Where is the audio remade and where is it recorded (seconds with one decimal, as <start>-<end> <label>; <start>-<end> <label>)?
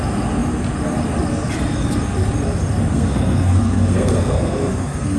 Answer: 0.0-2.9 recorded; 2.9-5.2 remade